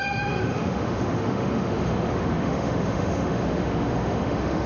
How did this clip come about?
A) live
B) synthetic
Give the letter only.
B